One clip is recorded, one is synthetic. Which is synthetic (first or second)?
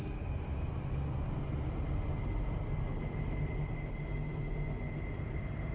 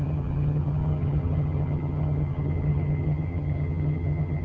second